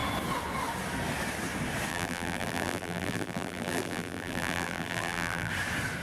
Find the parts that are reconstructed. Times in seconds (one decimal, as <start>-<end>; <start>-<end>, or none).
1.9-5.5